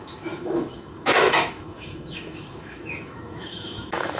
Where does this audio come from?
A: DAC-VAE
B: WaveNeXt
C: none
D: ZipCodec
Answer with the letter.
A